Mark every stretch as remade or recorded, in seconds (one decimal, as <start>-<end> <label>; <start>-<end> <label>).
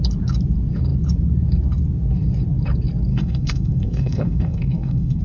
0.0-3.1 recorded; 3.1-5.2 remade